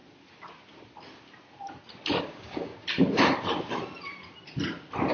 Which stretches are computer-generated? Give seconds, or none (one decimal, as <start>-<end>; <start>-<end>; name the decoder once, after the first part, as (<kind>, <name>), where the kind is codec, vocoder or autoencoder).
2.2-2.7 (codec, DAC)